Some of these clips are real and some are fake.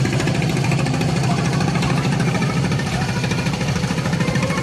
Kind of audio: fake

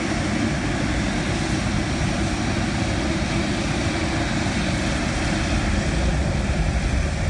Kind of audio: real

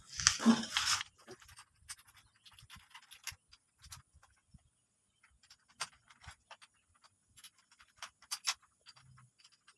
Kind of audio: real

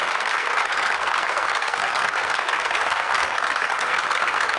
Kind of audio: fake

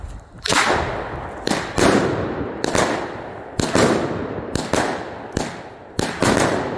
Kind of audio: real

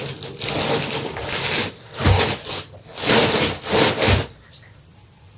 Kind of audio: real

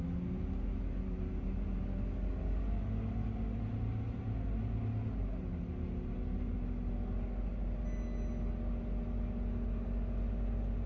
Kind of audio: real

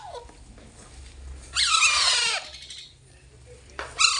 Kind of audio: real